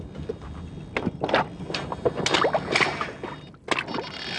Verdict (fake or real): real